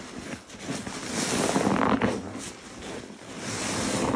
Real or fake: real